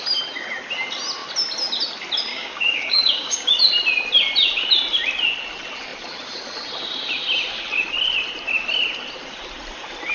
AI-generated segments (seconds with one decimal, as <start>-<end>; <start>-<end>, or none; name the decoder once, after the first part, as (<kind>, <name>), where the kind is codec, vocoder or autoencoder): 2.3-3.6 (codec, DAC)